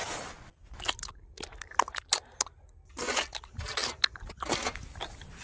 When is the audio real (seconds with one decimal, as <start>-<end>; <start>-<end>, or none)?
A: 0.0-5.4